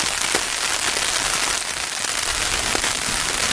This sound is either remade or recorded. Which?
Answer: recorded